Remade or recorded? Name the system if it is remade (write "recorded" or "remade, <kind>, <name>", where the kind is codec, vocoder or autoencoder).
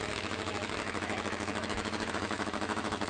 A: remade, autoencoder, DAC-VAE